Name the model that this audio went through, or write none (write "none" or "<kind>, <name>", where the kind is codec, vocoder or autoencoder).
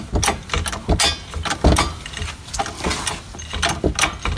none